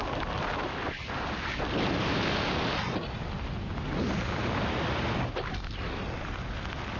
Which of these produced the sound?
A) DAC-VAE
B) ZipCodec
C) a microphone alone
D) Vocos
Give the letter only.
C